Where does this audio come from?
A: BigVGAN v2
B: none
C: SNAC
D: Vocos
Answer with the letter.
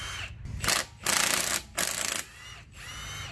B